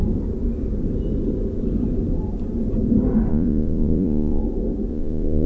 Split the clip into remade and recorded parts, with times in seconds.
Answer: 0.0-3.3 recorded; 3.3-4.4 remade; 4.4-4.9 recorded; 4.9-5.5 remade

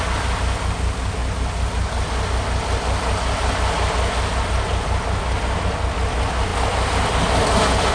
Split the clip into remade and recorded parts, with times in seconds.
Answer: 0.0-7.9 recorded

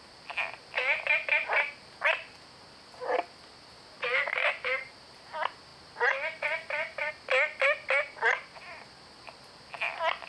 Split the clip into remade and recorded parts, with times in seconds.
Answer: 0.0-10.3 recorded